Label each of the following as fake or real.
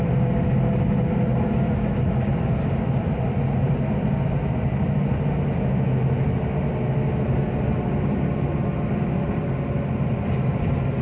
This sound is real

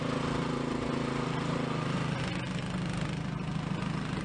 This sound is real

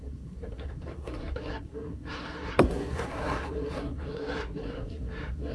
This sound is fake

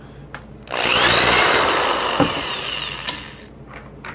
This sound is real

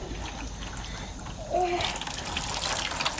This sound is real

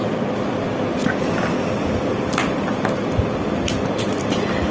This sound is real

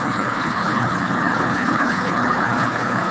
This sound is fake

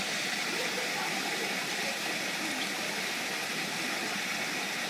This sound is real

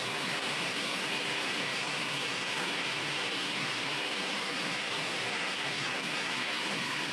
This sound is fake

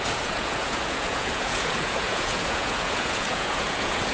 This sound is fake